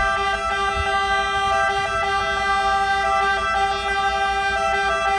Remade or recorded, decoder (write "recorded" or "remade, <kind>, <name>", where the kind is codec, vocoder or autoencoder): recorded